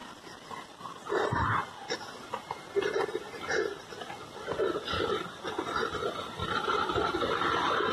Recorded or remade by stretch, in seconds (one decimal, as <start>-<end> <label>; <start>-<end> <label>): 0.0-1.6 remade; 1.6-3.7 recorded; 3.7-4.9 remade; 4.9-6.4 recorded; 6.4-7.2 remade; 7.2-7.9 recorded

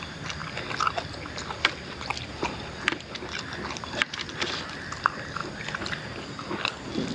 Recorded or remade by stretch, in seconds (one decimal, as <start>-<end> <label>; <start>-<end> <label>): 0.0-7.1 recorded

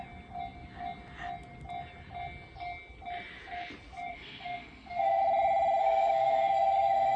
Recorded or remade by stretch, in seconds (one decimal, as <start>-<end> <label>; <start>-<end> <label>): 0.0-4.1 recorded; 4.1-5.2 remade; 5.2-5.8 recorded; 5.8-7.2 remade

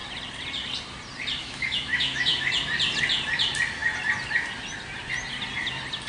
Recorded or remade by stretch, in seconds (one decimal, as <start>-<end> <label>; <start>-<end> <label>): 0.0-1.4 recorded; 1.4-2.5 remade; 2.5-6.1 recorded